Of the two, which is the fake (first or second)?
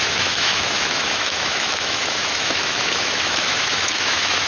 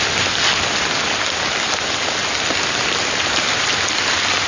first